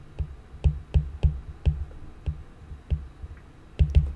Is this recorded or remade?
recorded